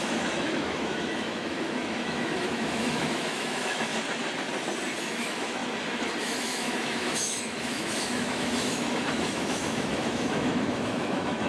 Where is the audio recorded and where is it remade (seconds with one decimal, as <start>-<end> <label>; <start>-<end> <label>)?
0.0-3.9 remade; 3.9-5.0 recorded; 5.0-5.6 remade; 5.6-6.2 recorded; 6.2-11.5 remade

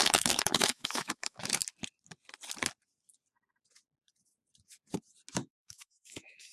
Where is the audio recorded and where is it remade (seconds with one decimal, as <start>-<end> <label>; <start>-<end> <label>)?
0.0-1.6 remade; 1.6-5.3 recorded; 5.3-6.5 remade

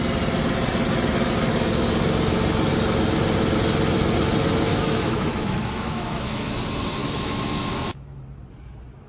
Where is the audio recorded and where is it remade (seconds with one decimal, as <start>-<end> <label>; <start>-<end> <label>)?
0.0-4.7 recorded; 4.7-6.5 remade; 6.5-7.0 recorded; 7.0-8.2 remade; 8.2-9.1 recorded

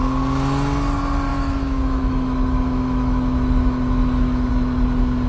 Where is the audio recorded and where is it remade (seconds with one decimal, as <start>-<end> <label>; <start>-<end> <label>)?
0.0-1.3 recorded; 1.3-4.5 remade; 4.5-5.3 recorded

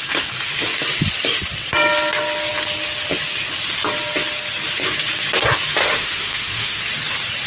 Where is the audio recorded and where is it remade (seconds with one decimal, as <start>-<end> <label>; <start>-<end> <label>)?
0.0-5.8 recorded; 5.8-6.8 remade; 6.8-7.5 recorded

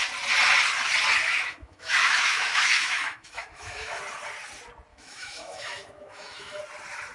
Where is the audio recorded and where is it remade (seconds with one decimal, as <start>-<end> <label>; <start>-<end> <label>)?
0.0-1.2 recorded; 1.2-4.0 remade; 4.0-4.9 recorded; 4.9-6.6 remade; 6.6-7.1 recorded

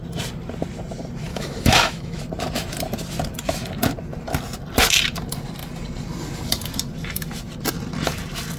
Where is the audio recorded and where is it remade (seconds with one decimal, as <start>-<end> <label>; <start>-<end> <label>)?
0.0-1.3 recorded; 1.3-2.2 remade; 2.2-8.6 recorded

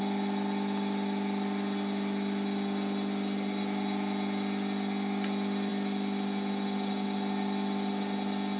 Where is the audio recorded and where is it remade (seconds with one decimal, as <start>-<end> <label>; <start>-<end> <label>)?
0.0-8.6 recorded